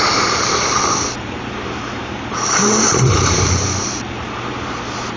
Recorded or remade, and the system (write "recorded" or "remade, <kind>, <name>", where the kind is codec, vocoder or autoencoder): remade, vocoder, BigVGAN v2